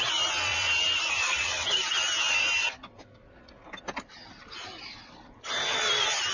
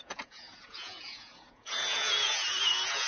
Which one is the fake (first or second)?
second